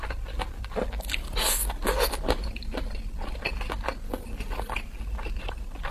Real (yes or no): yes